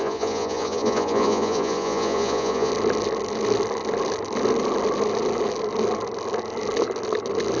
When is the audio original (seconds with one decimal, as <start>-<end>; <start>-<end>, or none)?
2.7-7.6